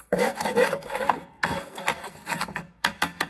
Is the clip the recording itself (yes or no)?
no